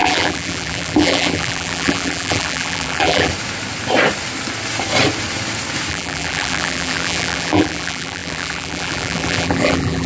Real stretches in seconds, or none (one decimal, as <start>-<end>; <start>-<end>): 3.3-5.9